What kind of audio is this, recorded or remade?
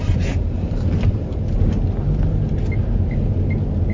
recorded